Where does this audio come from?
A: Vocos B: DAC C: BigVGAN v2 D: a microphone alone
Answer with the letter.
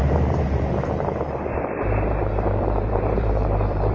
C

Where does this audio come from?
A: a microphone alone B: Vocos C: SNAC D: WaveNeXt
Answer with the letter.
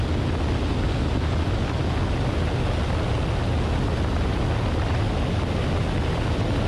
A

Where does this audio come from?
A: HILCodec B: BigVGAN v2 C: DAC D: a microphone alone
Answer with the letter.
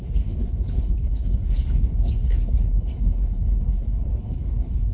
A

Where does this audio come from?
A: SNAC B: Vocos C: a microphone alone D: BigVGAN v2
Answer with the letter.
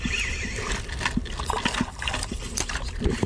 C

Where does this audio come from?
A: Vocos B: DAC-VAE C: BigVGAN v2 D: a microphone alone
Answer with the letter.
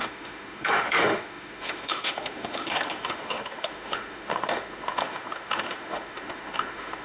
B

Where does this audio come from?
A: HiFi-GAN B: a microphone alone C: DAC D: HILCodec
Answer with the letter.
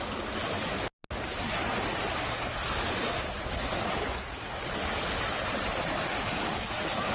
B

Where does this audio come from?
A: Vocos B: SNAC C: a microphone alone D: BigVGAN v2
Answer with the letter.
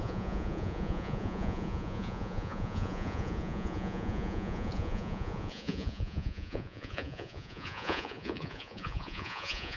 A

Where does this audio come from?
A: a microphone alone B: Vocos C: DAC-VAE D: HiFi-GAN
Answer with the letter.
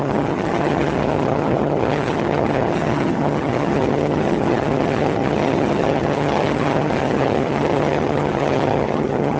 D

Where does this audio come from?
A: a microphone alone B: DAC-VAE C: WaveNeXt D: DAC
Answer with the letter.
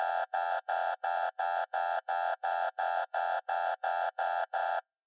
C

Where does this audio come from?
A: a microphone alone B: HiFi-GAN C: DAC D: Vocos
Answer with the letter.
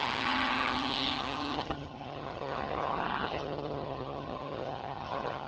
B